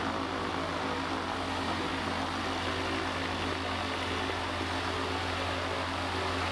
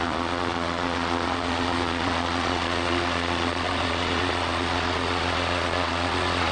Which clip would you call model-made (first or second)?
second